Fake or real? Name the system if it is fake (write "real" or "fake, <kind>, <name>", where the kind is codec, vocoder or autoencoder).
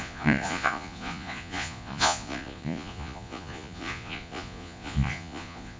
fake, vocoder, Vocos